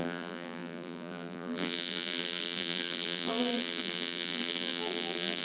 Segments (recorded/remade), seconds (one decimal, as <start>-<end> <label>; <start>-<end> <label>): 0.0-5.4 remade